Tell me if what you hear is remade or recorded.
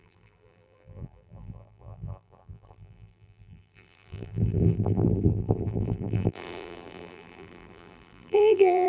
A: remade